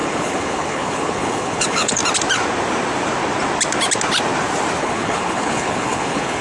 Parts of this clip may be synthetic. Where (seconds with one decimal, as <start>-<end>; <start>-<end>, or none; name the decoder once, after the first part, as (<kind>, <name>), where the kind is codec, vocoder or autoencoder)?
0.0-2.0 (codec, HILCodec); 4.8-6.4